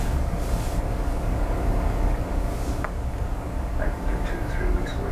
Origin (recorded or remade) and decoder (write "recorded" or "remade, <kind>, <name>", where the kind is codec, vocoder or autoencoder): remade, codec, DAC